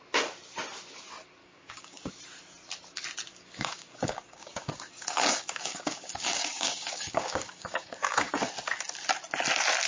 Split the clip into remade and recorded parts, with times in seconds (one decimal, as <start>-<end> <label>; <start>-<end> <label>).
0.0-1.4 recorded; 1.4-2.1 remade; 2.1-3.3 recorded; 3.3-8.4 remade; 8.4-9.9 recorded